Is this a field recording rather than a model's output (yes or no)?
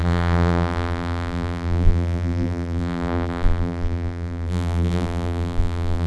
no